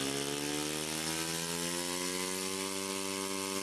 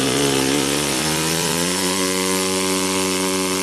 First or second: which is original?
first